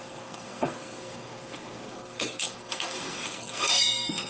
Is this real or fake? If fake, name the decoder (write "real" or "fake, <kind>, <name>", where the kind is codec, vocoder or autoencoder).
fake, codec, SNAC